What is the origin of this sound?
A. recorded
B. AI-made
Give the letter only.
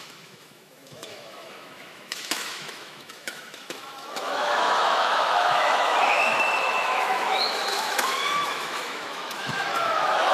B